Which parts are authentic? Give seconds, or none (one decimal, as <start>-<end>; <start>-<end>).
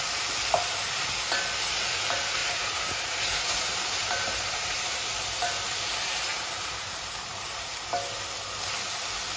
0.0-2.4; 5.1-6.3; 7.7-9.4